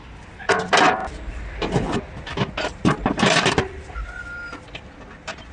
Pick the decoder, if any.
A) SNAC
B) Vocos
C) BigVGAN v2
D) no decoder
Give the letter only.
C